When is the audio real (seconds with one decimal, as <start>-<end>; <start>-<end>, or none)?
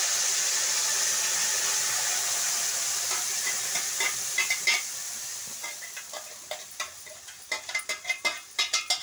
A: 0.0-9.0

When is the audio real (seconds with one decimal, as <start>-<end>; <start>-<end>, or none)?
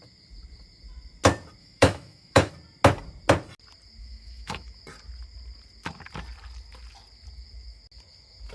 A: 0.0-1.6; 2.5-4.0; 4.8-8.5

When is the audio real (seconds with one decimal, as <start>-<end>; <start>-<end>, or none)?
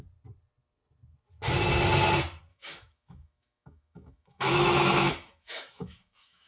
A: 0.0-2.5